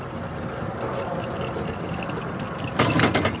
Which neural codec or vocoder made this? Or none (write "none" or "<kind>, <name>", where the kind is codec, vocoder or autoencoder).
none